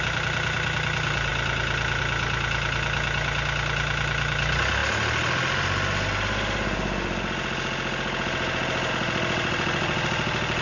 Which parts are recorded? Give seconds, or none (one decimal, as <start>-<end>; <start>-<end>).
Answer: 0.0-10.6